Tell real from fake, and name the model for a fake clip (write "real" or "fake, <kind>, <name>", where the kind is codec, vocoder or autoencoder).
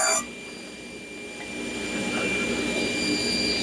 real